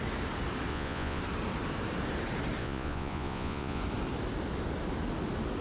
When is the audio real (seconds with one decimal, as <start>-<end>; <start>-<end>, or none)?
0.0-0.7; 1.2-2.6; 3.8-5.6